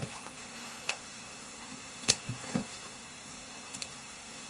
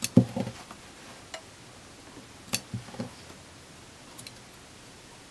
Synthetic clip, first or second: first